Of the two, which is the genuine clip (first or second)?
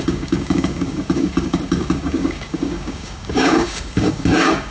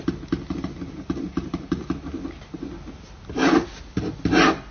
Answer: second